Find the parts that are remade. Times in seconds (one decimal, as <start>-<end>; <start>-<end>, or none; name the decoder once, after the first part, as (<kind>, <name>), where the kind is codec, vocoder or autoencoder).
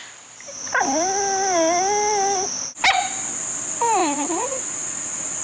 4.0-5.4 (vocoder, Vocos)